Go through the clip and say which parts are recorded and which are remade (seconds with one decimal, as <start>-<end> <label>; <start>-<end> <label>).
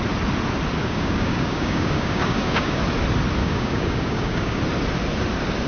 0.0-0.8 recorded; 0.8-2.8 remade; 2.8-3.4 recorded; 3.4-4.6 remade; 4.6-5.7 recorded